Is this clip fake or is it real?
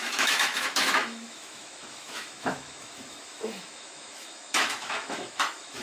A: fake